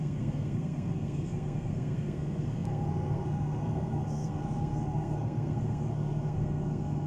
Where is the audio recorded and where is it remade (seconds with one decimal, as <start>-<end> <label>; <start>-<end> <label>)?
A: 0.0-7.1 remade